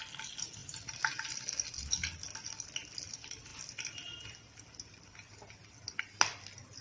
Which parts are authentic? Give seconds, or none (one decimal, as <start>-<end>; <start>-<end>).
0.0-6.8